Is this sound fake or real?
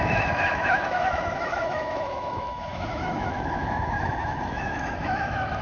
fake